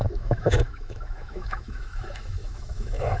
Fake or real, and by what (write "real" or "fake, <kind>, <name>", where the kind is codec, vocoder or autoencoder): fake, autoencoder, DAC-VAE